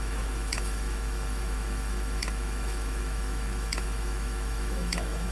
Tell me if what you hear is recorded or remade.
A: remade